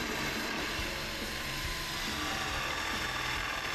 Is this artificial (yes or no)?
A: yes